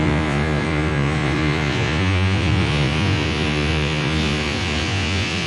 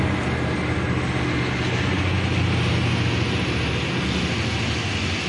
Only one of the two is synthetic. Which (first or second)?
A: first